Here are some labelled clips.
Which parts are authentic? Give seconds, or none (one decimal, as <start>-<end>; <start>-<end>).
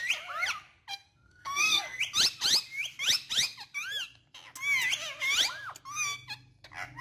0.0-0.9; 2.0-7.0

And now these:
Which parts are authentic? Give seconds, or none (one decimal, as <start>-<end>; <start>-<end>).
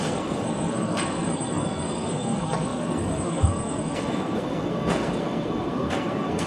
none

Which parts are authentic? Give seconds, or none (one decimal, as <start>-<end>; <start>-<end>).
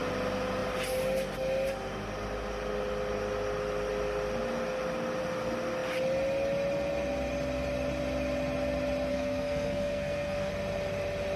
0.0-9.1; 10.5-11.4